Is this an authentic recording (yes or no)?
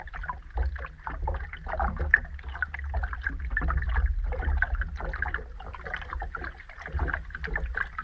yes